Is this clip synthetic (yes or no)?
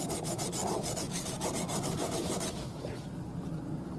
no